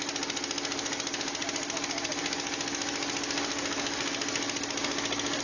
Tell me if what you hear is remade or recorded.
recorded